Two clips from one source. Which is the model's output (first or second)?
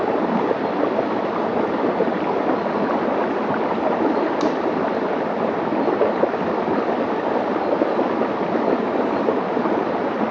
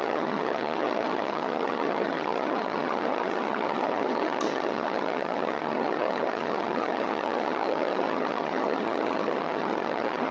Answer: second